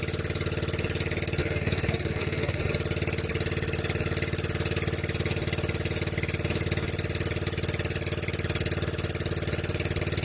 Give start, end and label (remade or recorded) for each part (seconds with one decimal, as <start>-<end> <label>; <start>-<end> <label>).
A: 0.0-1.4 recorded; 1.4-2.7 remade; 2.7-10.2 recorded

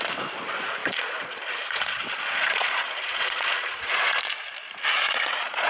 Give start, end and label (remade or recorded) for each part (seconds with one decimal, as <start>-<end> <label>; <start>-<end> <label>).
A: 0.0-0.8 recorded; 0.8-4.2 remade; 4.2-4.9 recorded; 4.9-5.7 remade

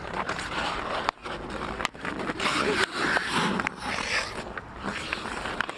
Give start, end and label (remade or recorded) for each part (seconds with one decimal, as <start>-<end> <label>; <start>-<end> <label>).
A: 0.0-1.2 remade; 1.2-4.7 recorded; 4.7-5.8 remade

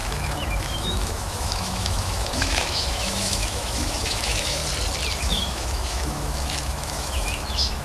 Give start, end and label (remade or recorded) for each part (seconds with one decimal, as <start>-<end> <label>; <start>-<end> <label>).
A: 0.0-4.6 remade; 4.6-5.2 recorded; 5.2-7.8 remade

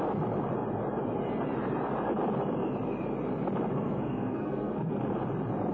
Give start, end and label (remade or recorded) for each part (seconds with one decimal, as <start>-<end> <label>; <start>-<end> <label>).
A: 0.0-3.7 recorded; 3.7-5.0 remade; 5.0-5.7 recorded

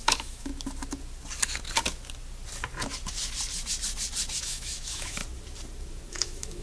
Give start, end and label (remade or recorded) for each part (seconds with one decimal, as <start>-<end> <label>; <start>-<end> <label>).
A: 0.0-0.5 remade; 0.5-4.4 recorded; 4.4-5.2 remade; 5.2-6.1 recorded; 6.1-6.6 remade

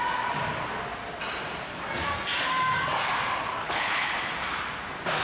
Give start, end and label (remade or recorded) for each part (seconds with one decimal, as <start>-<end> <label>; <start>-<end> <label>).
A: 0.0-3.6 recorded; 3.6-4.1 remade; 4.1-5.2 recorded

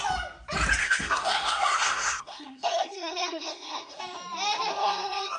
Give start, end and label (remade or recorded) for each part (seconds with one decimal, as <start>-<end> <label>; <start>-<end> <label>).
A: 0.0-0.8 recorded; 0.8-4.0 remade; 4.0-4.7 recorded; 4.7-5.4 remade